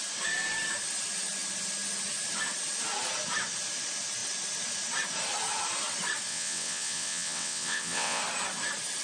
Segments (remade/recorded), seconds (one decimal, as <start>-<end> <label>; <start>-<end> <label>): 0.0-6.3 recorded; 6.3-8.2 remade; 8.2-9.0 recorded